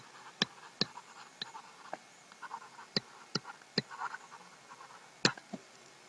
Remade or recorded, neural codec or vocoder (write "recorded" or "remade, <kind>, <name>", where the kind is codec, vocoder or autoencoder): recorded